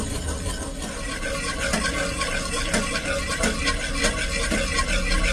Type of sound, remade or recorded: recorded